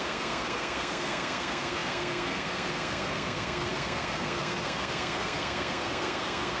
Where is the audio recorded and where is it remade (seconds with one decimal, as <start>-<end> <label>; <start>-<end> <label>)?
0.0-6.6 remade